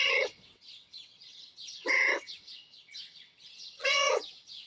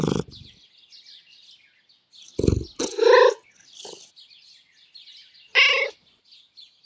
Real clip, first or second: second